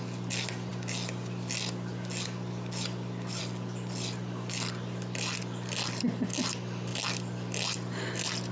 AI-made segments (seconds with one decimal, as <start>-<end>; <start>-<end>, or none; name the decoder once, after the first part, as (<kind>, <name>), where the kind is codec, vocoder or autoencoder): none